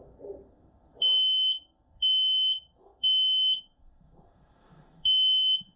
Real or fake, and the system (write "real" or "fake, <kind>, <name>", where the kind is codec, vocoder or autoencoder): fake, autoencoder, DAC-VAE